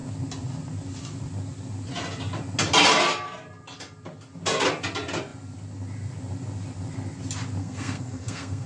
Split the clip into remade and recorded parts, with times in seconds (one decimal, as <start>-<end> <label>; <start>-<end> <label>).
0.0-7.6 recorded; 7.6-8.7 remade